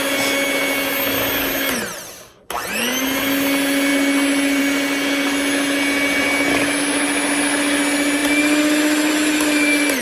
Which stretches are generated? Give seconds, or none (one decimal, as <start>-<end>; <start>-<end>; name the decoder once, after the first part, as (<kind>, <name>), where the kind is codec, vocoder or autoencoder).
none